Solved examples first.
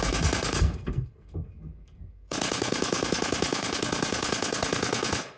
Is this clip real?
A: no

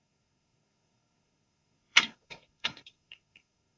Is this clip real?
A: no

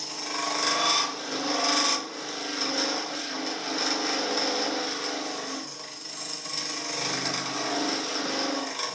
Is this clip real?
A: yes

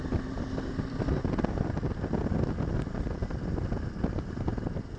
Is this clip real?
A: yes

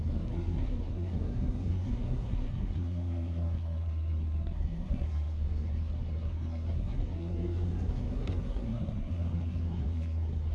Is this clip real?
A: no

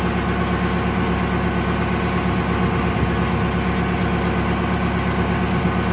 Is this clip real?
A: yes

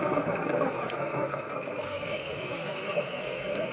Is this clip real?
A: no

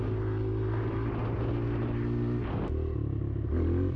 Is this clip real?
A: yes